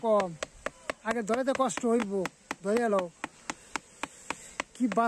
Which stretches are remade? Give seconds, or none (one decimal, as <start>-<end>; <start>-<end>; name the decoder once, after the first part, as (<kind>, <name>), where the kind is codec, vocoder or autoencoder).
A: none